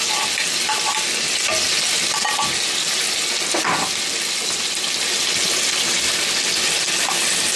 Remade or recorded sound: recorded